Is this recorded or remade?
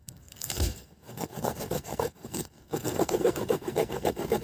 remade